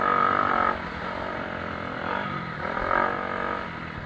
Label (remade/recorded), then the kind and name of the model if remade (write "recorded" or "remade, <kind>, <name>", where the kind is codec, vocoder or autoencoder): recorded